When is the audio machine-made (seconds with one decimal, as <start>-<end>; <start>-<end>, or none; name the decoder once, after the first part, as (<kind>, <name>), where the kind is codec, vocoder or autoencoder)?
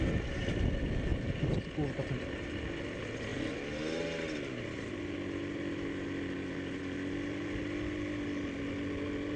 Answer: none